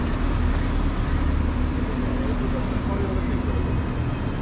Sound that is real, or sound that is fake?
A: real